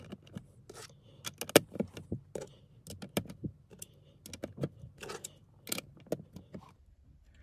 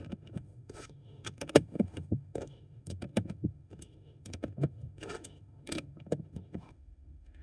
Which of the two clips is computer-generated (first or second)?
second